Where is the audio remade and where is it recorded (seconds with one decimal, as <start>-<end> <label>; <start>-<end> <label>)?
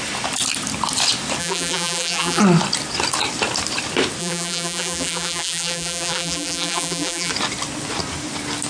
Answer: 0.0-1.4 recorded; 1.4-2.4 remade; 2.4-4.2 recorded; 4.2-7.3 remade; 7.3-8.7 recorded